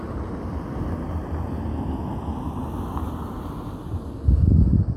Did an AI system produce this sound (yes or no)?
no